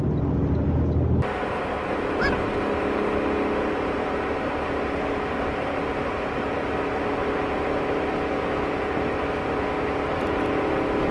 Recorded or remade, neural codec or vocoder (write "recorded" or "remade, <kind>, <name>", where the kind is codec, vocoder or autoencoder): recorded